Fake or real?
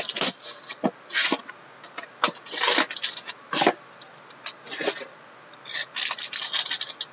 real